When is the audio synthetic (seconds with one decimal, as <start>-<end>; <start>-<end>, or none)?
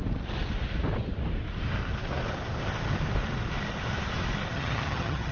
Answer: 4.5-5.3